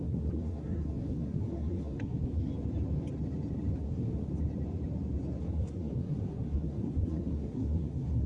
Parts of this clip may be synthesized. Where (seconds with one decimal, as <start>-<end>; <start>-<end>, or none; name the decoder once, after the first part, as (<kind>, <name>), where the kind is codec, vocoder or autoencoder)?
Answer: 0.0-2.5 (codec, SNAC); 3.8-4.3; 5.4-8.3